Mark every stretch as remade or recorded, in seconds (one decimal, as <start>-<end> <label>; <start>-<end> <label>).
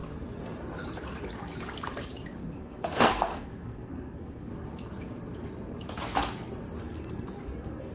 0.0-2.4 recorded; 2.4-4.5 remade; 4.5-6.8 recorded; 6.8-7.9 remade